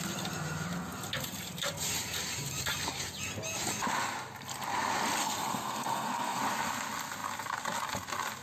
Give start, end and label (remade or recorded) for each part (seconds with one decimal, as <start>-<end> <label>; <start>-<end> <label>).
0.0-5.2 recorded; 5.2-6.4 remade; 6.4-8.4 recorded